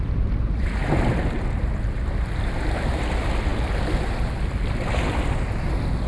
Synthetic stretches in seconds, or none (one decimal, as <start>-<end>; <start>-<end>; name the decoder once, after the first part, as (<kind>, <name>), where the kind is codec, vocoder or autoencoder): none